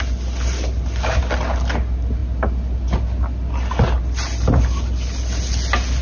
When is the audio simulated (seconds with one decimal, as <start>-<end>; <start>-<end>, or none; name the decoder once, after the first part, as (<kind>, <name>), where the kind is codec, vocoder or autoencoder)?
none